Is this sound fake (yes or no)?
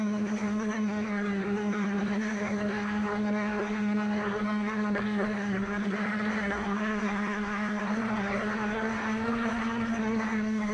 yes